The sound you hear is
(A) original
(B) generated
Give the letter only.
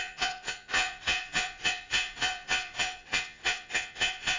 B